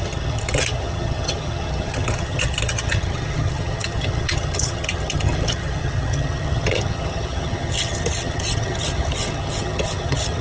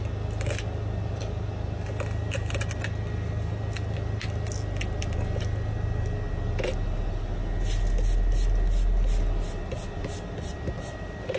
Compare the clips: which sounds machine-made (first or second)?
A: first